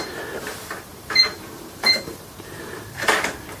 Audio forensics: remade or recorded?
remade